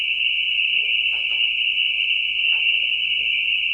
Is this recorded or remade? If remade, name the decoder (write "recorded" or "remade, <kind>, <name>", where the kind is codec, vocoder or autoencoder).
remade, vocoder, Vocos